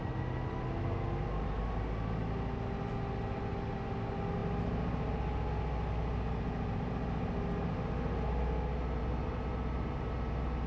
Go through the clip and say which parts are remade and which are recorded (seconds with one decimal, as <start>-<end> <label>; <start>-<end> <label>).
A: 0.0-10.7 recorded